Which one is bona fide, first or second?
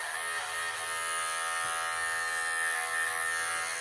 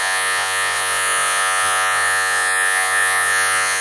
first